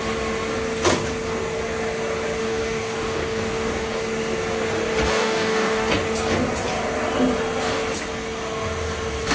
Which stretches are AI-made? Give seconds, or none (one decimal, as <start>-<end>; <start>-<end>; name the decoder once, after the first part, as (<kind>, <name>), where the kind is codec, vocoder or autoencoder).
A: 2.4-4.0 (codec, DAC); 5.1-5.9